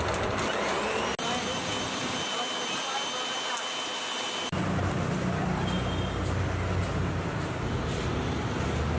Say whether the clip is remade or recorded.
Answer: recorded